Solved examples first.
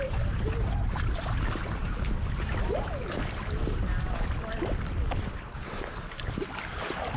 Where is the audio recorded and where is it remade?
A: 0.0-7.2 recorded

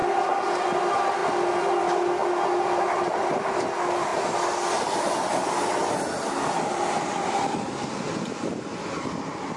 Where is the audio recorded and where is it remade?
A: 0.0-9.6 recorded

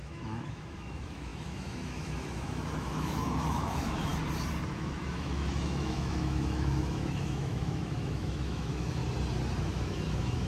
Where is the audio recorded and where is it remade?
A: 0.0-4.1 remade; 4.1-4.7 recorded; 4.7-9.0 remade; 9.0-9.6 recorded; 9.6-10.5 remade

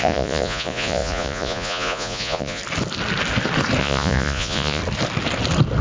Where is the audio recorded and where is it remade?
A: 0.0-2.6 remade; 2.6-3.8 recorded; 3.8-4.8 remade; 4.8-5.8 recorded

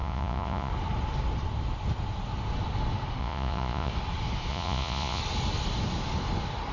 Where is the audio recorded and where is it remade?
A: 0.0-0.7 remade; 0.7-3.2 recorded; 3.2-3.9 remade; 3.9-4.5 recorded; 4.5-5.2 remade; 5.2-6.7 recorded